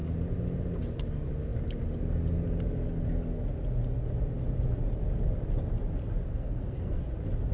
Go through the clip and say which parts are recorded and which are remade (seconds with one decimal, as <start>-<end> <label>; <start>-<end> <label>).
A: 0.0-6.3 recorded; 6.3-7.0 remade; 7.0-7.5 recorded